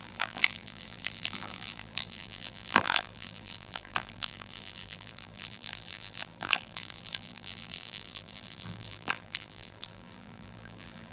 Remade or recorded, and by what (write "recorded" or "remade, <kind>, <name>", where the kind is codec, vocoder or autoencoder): remade, vocoder, BigVGAN v2